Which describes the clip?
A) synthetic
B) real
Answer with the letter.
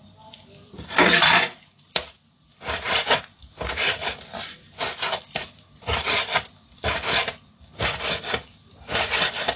A